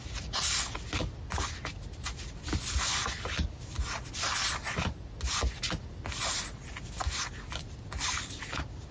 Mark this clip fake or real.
real